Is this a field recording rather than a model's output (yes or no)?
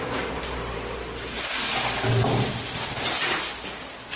yes